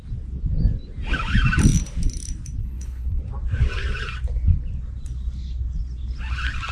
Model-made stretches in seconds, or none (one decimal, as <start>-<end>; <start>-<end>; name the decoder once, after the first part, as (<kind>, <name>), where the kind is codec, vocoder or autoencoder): 2.6-3.2 (codec, HILCodec)